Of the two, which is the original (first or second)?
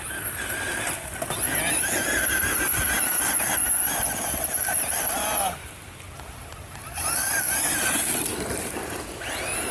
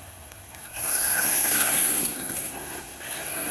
first